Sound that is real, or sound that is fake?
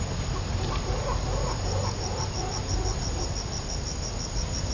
real